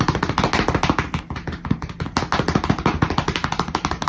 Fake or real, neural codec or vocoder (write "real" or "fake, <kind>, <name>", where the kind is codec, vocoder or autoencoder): real